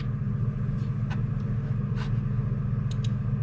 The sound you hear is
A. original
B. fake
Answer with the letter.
A